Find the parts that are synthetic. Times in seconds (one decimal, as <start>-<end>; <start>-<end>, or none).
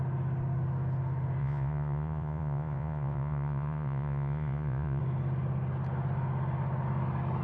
1.4-5.0